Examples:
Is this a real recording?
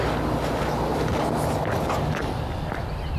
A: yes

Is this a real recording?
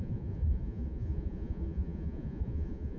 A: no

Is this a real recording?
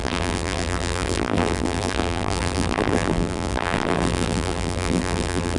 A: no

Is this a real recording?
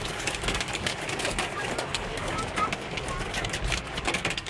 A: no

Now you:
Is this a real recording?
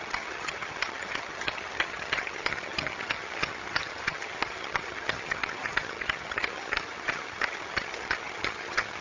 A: no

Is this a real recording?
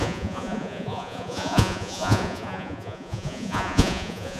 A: no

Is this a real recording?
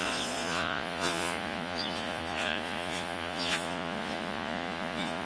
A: no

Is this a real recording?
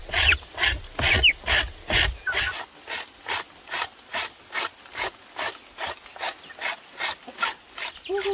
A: yes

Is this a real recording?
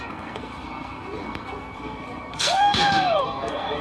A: no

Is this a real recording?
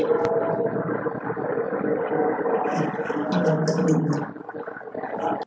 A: yes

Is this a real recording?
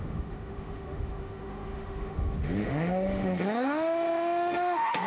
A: no